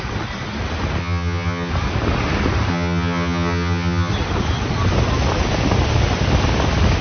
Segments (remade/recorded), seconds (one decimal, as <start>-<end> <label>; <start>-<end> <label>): 0.0-1.0 recorded; 1.0-1.7 remade; 1.7-2.7 recorded; 2.7-4.1 remade; 4.1-7.0 recorded